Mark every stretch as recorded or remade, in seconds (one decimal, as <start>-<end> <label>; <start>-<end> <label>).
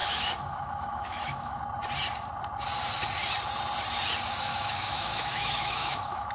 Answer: 0.0-1.6 remade; 1.6-4.5 recorded; 4.5-6.3 remade